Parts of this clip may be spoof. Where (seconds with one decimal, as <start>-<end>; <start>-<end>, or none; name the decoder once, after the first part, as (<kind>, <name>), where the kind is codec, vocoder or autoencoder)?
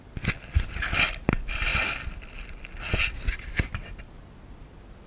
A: none